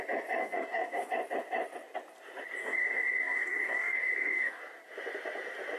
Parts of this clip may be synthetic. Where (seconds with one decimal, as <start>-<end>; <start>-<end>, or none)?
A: 0.4-1.1; 2.6-4.6